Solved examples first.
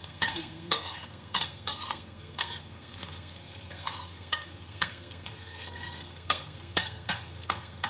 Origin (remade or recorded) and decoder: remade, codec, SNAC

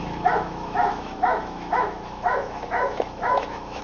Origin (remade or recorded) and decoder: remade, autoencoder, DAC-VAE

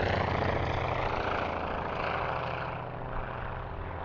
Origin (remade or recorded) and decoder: recorded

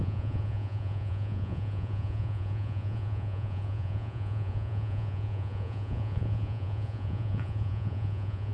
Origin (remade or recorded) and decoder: remade, vocoder, Vocos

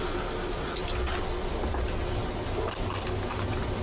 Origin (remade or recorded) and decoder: recorded